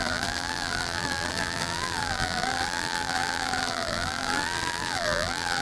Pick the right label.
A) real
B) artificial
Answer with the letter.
B